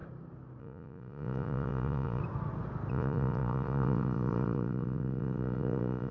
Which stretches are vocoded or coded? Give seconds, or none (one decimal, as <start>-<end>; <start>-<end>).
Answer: 0.6-2.2; 2.9-6.1